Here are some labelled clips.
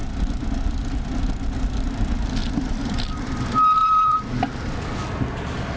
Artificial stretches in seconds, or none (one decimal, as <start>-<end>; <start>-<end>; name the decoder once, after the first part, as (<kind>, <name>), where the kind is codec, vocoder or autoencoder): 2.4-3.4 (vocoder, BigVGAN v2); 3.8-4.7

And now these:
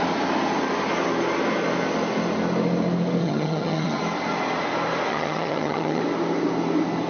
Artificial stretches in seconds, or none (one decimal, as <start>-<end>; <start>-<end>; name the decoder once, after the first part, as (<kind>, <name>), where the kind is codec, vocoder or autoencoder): 3.2-4.0 (vocoder, HiFi-GAN); 5.1-6.0

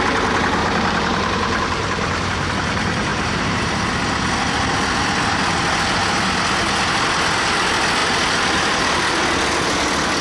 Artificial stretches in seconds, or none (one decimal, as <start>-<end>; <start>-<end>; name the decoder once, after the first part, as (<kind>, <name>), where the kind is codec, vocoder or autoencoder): 0.6-2.5 (vocoder, BigVGAN v2); 3.1-3.8

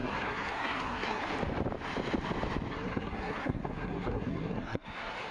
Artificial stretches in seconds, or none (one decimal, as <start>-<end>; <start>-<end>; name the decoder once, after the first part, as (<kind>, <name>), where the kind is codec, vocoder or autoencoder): 0.0-1.2 (codec, SNAC); 2.7-5.3